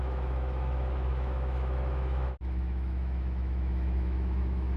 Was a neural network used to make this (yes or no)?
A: yes